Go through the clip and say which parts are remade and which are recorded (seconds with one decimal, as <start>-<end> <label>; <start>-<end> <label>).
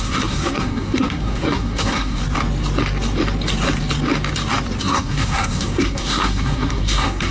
0.0-2.2 remade; 2.2-4.8 recorded; 4.8-7.3 remade